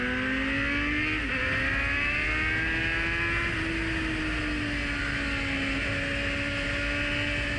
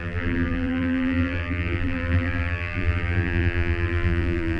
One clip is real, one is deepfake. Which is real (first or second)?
first